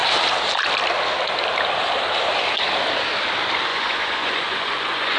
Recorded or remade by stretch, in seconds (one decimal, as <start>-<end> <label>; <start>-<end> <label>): 0.0-3.7 recorded; 3.7-5.2 remade